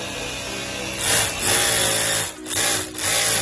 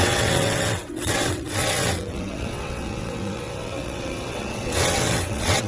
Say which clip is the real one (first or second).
first